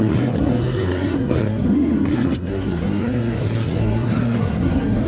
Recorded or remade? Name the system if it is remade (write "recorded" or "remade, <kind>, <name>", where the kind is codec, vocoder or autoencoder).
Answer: remade, codec, SNAC